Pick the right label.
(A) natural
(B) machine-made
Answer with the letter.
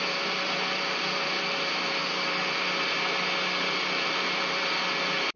A